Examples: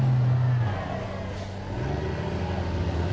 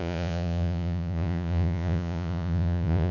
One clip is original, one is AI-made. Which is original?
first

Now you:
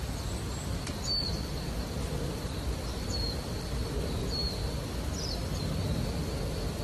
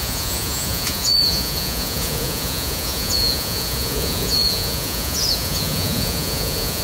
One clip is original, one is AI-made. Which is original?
first